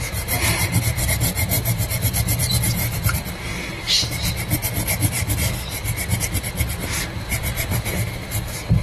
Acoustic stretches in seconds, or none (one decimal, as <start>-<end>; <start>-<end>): 4.6-7.0